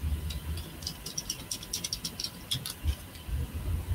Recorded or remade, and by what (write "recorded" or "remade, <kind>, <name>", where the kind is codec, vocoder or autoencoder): recorded